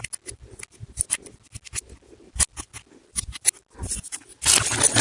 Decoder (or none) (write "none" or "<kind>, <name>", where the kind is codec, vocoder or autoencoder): none